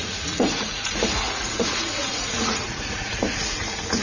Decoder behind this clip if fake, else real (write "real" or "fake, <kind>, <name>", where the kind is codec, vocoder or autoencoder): fake, vocoder, Vocos